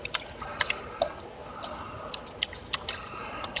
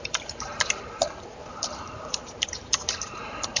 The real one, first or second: first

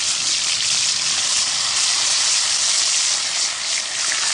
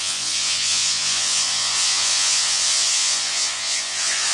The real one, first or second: first